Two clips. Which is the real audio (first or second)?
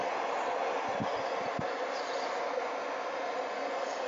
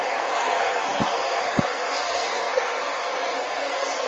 first